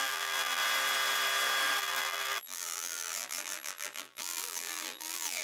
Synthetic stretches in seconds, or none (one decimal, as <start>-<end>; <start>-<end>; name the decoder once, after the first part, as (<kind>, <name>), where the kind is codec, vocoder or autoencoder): 0.0-0.6 (vocoder, BigVGAN v2); 1.8-5.4